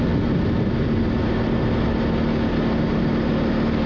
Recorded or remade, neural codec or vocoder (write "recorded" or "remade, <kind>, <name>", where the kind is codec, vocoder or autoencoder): recorded